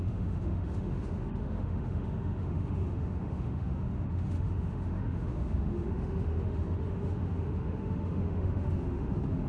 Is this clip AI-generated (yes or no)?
yes